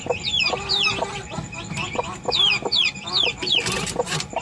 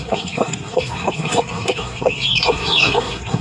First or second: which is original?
first